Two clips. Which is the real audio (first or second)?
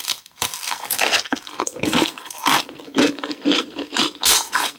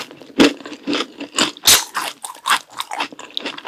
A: second